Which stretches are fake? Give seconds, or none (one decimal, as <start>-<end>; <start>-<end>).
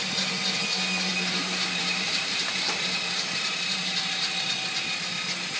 1.1-4.5